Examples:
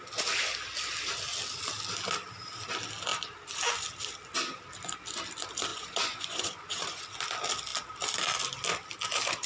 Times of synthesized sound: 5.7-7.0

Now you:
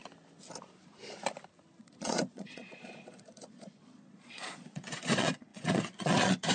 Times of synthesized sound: 1.8-6.5

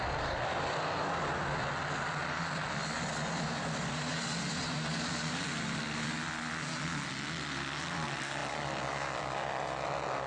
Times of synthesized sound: none

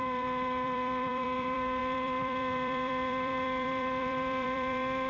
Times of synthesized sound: 0.0-5.1

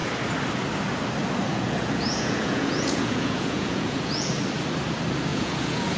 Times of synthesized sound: 1.5-4.3; 5.3-6.0